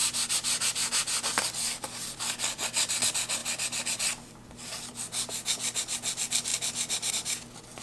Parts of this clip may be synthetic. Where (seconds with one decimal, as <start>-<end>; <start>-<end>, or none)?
0.0-3.0